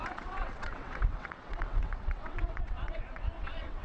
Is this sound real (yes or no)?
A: no